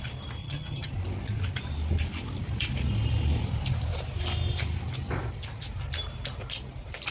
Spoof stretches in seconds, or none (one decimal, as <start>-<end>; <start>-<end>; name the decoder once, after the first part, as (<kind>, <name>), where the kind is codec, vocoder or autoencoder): 0.4-0.9 (vocoder, HiFi-GAN)